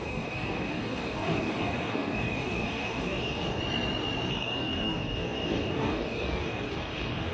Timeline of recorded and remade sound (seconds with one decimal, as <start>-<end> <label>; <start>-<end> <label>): 0.0-3.6 remade; 3.6-4.3 recorded; 4.3-7.3 remade